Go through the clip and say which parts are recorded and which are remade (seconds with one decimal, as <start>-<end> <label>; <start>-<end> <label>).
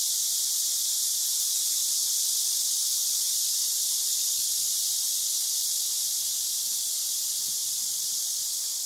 0.0-8.9 recorded